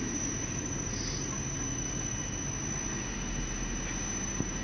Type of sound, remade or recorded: recorded